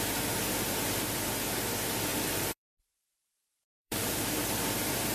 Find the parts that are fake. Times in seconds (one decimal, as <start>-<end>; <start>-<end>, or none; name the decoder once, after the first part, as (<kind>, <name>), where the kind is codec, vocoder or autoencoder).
2.1-4.5 (vocoder, BigVGAN v2)